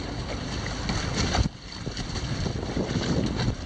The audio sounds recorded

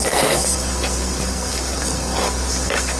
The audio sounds remade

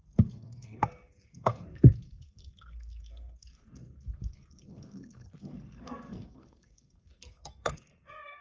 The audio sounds remade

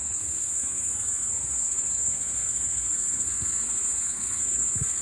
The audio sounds remade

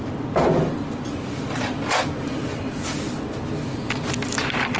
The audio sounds recorded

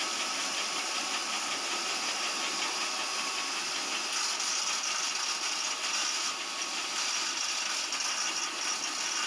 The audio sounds recorded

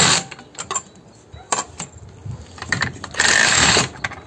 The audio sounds recorded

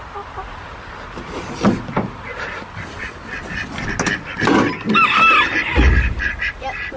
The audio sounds recorded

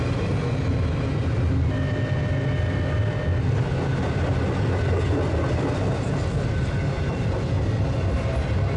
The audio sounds recorded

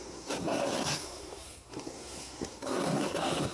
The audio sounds remade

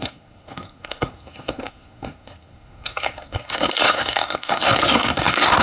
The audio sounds remade